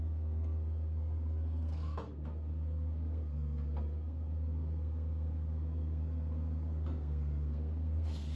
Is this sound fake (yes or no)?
yes